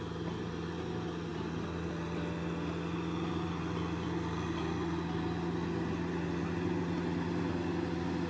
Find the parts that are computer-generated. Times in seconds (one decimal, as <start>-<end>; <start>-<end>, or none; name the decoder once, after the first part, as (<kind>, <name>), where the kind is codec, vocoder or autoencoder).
none